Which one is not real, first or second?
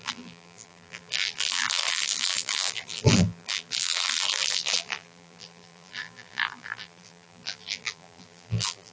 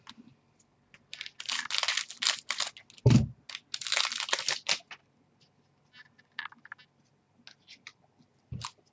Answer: first